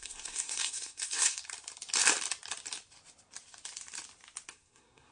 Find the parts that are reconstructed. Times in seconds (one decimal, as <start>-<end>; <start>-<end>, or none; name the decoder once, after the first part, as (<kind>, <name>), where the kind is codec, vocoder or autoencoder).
0.0-1.4 (codec, SNAC); 4.5-5.1